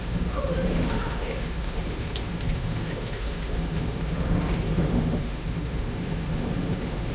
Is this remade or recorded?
remade